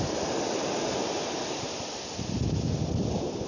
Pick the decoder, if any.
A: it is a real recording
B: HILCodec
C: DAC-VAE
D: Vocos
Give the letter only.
A